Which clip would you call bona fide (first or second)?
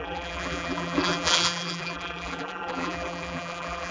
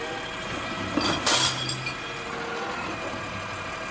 second